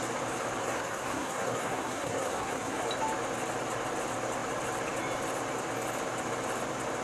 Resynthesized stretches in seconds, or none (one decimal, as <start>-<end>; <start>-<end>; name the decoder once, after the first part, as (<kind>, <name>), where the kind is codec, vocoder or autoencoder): 0.6-2.9 (codec, SNAC)